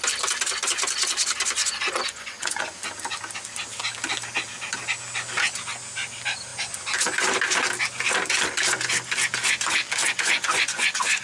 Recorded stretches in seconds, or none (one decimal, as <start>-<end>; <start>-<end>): 0.0-1.6; 2.6-10.0